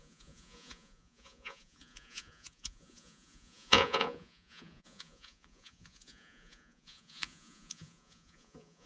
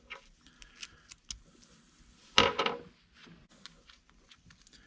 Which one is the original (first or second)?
second